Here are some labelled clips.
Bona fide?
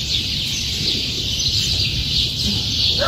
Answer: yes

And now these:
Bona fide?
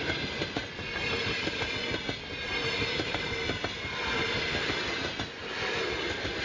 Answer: yes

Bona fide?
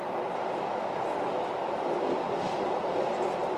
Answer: no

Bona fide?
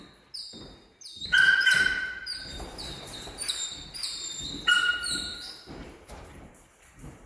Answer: no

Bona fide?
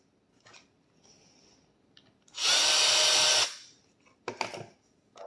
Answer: yes